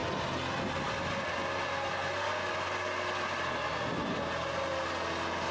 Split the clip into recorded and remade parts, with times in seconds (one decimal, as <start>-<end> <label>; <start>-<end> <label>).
0.0-5.5 recorded